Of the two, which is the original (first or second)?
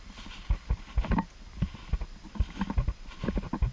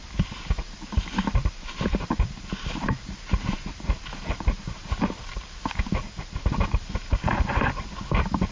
first